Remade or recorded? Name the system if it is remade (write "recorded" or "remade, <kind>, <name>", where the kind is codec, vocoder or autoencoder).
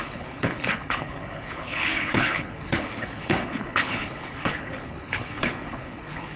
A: remade, codec, HILCodec